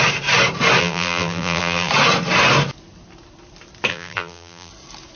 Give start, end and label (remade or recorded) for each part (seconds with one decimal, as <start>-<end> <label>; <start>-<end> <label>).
0.0-0.8 recorded; 0.8-1.9 remade; 1.9-3.9 recorded; 3.9-4.7 remade; 4.7-5.2 recorded